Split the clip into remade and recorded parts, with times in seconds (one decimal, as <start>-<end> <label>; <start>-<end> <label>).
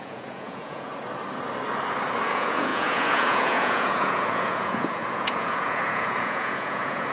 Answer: 0.0-0.9 remade; 0.9-2.3 recorded; 2.3-7.1 remade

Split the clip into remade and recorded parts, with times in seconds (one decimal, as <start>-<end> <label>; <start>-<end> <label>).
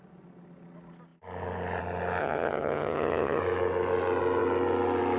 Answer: 0.0-2.2 recorded; 2.2-3.4 remade; 3.4-5.2 recorded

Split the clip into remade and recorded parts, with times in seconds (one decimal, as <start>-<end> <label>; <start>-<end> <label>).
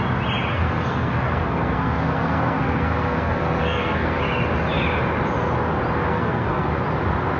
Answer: 0.0-0.5 recorded; 0.5-4.2 remade; 4.2-6.1 recorded; 6.1-6.7 remade; 6.7-7.4 recorded